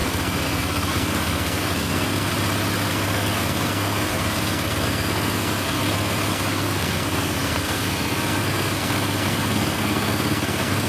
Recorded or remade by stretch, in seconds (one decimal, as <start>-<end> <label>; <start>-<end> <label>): 0.0-2.3 remade; 2.3-2.9 recorded; 2.9-10.9 remade